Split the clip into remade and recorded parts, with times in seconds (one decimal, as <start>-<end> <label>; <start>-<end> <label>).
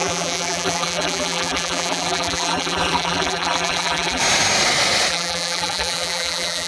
0.0-4.2 remade; 4.2-5.1 recorded; 5.1-6.7 remade